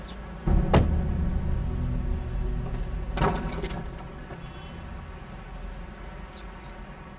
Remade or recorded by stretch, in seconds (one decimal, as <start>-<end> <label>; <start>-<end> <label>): 0.0-7.2 recorded